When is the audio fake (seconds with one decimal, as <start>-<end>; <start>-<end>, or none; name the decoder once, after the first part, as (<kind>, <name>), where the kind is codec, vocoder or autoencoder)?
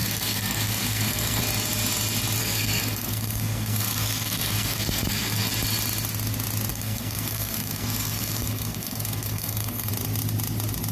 0.0-1.4 (codec, SNAC); 2.4-5.5; 6.7-9.9